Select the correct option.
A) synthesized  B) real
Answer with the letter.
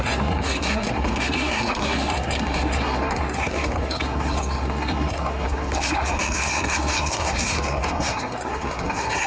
A